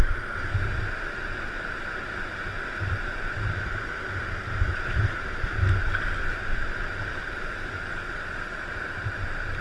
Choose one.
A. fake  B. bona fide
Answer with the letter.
B